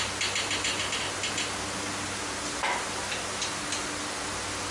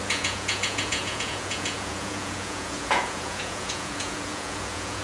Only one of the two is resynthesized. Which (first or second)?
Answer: second